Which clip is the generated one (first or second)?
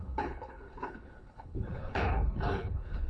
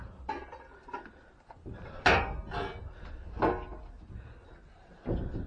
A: first